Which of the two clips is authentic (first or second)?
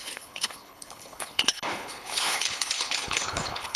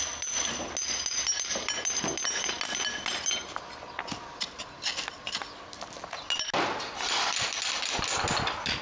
second